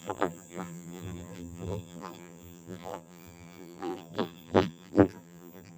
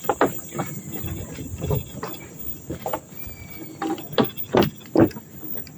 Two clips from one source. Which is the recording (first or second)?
second